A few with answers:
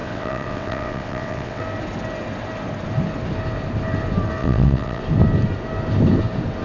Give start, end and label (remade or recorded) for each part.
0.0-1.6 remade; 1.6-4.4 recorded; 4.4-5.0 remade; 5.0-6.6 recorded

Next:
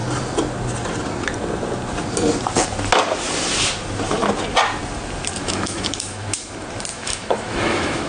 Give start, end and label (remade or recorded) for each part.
0.0-5.4 recorded; 5.4-6.5 remade; 6.5-6.9 recorded; 6.9-8.1 remade